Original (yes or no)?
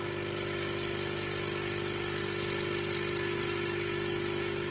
yes